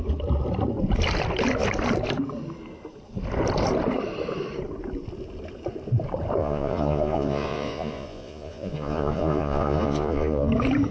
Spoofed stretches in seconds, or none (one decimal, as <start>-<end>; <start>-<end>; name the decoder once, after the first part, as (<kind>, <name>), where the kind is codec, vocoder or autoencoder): 6.4-10.5 (vocoder, Vocos)